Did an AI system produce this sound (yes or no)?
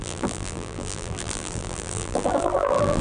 yes